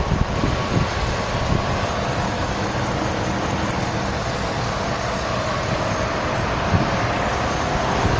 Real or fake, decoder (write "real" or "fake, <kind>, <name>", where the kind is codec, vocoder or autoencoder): real